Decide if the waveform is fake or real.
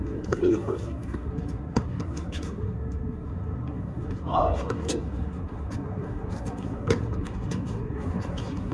fake